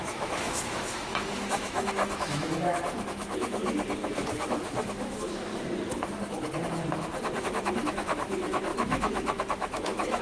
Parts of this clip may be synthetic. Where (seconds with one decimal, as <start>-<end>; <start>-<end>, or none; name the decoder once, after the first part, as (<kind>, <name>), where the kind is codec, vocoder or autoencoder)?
0.0-3.6 (autoencoder, DAC-VAE); 4.3-5.5; 7.4-10.2